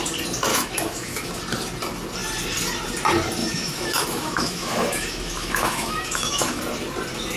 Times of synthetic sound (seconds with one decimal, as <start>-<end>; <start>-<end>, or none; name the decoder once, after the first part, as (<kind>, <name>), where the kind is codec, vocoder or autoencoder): 0.5-1.4 (autoencoder, DAC-VAE); 3.4-6.6